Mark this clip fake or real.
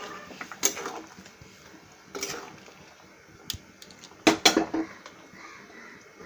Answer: real